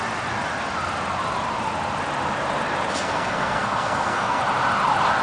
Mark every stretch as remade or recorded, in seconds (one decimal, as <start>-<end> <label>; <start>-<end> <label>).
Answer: 0.0-2.9 recorded; 2.9-4.4 remade; 4.4-5.2 recorded